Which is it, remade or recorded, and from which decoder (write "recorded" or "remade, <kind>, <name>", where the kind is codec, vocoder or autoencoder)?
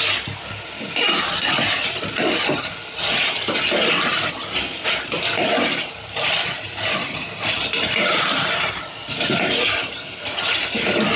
recorded